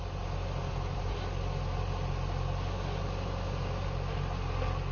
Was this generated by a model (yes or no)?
no